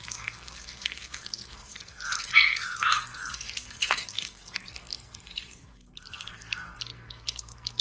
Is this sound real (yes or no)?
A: no